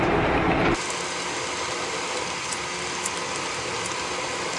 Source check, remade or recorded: recorded